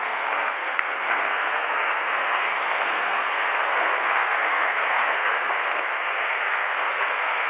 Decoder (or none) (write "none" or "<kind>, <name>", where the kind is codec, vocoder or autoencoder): codec, SNAC